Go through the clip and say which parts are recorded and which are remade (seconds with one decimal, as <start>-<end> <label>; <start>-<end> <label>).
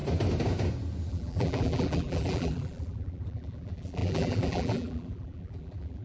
0.0-1.1 recorded; 1.1-6.0 remade